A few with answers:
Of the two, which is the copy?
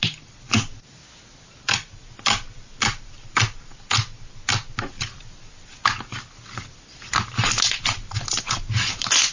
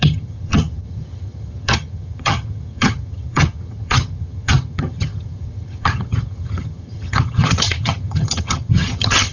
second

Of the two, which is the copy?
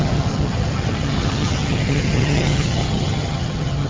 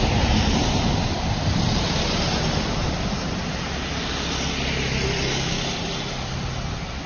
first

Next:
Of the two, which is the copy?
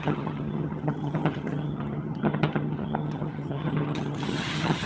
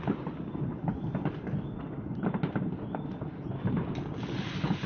first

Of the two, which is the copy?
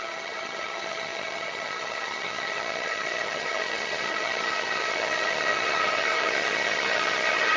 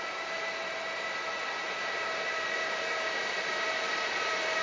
first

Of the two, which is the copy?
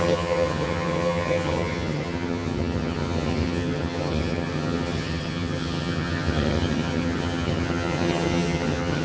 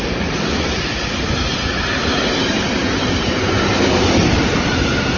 first